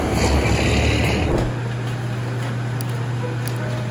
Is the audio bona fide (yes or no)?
yes